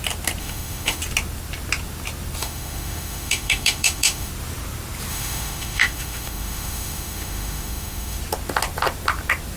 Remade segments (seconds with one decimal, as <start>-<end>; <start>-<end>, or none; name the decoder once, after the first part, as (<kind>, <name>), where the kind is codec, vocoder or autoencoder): 0.4-1.0 (autoencoder, DAC-VAE); 2.4-4.3; 5.1-8.2